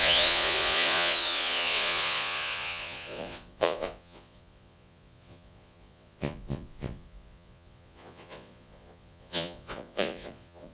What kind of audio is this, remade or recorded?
remade